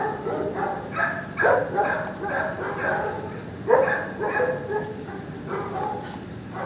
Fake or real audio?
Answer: real